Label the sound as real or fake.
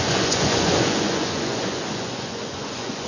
fake